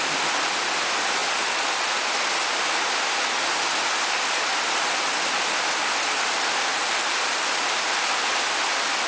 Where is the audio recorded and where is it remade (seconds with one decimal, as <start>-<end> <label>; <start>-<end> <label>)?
0.0-9.1 recorded